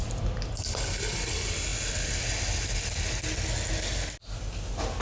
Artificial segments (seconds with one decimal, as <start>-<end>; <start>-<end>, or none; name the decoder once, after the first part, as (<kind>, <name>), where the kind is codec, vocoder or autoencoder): none